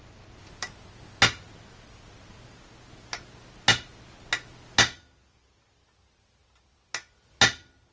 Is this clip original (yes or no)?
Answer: yes